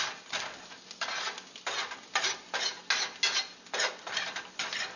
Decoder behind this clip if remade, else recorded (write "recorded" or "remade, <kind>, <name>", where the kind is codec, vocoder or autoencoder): recorded